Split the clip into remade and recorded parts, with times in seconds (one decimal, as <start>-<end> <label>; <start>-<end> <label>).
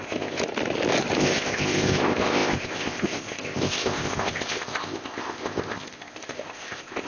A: 0.0-0.4 remade; 0.4-1.2 recorded; 1.2-7.1 remade